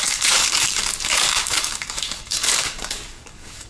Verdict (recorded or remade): remade